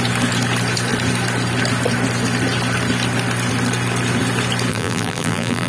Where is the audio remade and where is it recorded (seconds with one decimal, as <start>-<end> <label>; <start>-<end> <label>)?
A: 0.0-4.7 recorded; 4.7-5.7 remade